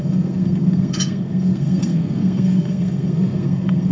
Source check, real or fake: fake